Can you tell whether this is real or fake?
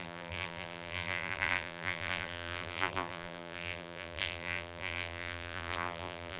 fake